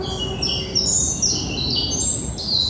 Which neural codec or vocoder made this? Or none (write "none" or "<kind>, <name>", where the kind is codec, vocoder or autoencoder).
none